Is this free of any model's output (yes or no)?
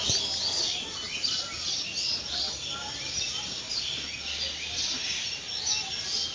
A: yes